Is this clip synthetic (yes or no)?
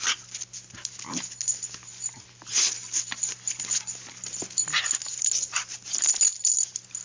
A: no